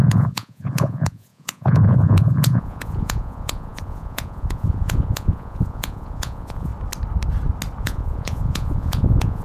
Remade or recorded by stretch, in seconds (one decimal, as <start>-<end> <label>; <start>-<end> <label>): 0.0-6.7 remade; 6.7-7.8 recorded; 7.8-9.4 remade